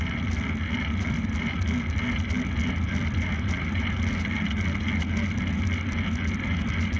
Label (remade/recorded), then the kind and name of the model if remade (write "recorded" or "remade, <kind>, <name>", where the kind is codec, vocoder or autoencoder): recorded